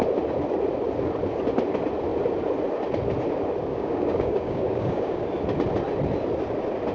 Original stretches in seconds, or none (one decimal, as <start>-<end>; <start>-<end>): 0.0-3.7; 5.2-6.9